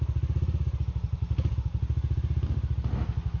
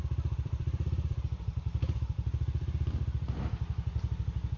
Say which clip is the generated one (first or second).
second